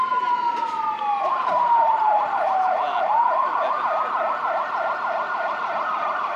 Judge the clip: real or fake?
real